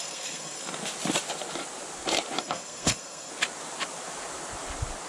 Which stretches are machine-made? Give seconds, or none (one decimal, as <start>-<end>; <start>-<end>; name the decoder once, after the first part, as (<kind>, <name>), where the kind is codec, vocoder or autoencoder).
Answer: 0.0-0.7 (codec, SNAC); 2.4-3.3